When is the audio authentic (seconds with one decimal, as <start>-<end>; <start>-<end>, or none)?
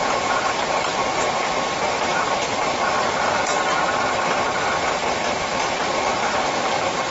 0.5-7.1